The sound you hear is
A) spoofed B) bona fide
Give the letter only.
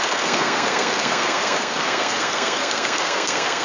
A